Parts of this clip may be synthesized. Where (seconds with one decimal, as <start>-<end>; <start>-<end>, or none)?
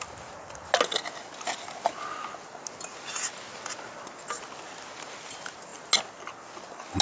none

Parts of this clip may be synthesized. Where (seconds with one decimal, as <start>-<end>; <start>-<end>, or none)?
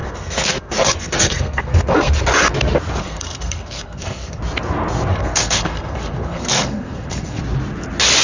0.0-2.1; 3.0-4.4; 5.1-7.4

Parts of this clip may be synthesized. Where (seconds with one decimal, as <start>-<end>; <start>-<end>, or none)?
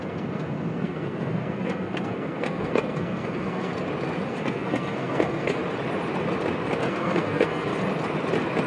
0.0-3.7; 4.3-5.6; 6.8-7.7